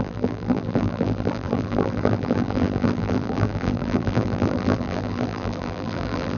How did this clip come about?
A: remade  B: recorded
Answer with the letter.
A